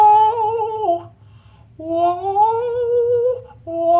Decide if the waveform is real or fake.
real